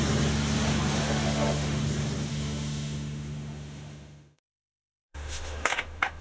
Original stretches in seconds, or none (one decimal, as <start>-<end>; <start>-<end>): 0.0-1.0; 1.8-2.3